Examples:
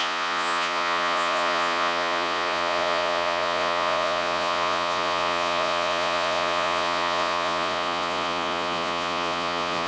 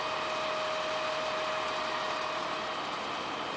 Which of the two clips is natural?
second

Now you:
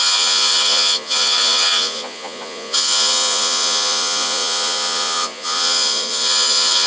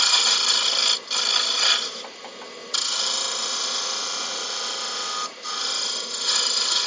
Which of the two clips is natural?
second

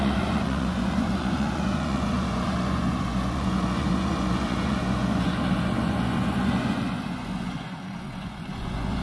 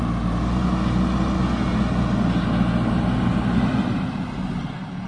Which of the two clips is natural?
second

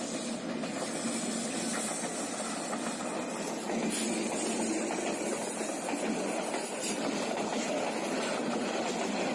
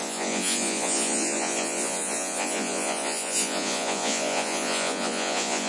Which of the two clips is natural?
first